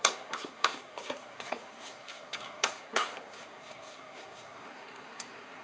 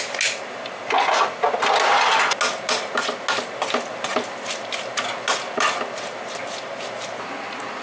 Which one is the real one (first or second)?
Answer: second